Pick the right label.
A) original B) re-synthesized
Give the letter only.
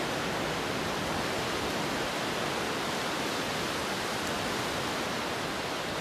A